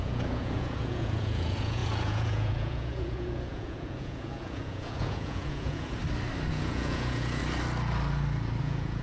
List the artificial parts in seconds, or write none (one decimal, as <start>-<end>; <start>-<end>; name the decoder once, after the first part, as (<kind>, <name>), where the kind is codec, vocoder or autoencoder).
0.0-6.0 (vocoder, Vocos); 6.5-7.4; 8.6-9.0